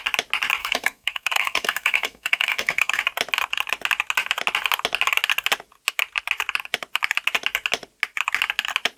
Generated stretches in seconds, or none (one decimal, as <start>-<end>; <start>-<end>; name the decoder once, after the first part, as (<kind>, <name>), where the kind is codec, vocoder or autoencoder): 0.6-3.0 (codec, SNAC)